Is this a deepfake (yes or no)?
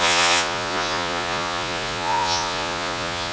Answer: yes